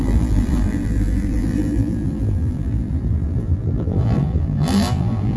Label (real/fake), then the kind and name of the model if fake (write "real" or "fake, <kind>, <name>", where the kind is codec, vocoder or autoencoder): fake, vocoder, BigVGAN v2